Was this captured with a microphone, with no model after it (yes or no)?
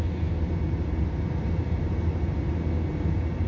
yes